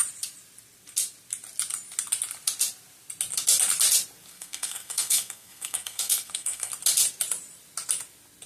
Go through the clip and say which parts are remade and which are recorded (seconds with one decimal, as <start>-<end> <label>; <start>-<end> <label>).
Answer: 0.0-4.3 recorded; 4.3-6.7 remade; 6.7-8.5 recorded